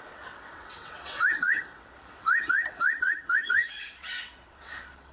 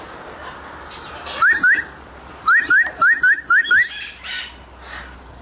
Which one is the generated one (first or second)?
first